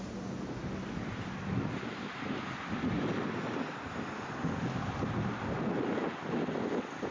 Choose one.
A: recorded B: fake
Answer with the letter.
A